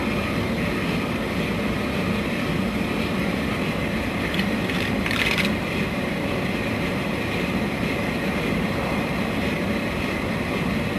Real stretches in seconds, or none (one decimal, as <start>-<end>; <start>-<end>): 0.0-3.2; 7.8-11.0